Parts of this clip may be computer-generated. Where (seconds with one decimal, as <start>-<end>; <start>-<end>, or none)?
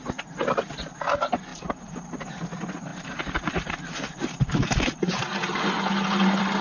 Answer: 1.5-2.3; 2.9-5.2